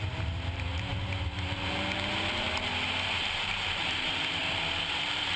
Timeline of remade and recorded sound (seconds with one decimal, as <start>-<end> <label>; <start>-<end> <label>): 0.0-2.7 remade; 2.7-3.2 recorded; 3.2-4.4 remade; 4.4-4.9 recorded; 4.9-5.4 remade